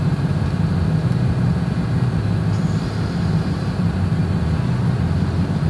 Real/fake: real